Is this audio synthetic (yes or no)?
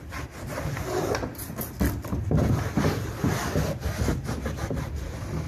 no